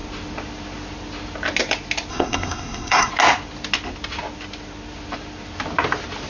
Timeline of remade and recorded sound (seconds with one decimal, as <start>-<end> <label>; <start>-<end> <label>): 0.0-2.1 recorded; 2.1-3.1 remade; 3.1-6.3 recorded